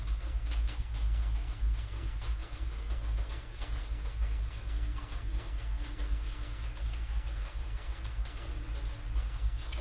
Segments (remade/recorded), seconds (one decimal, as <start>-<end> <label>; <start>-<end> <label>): 0.0-8.5 remade; 8.5-9.2 recorded; 9.2-9.8 remade